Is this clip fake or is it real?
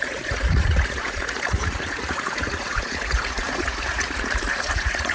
fake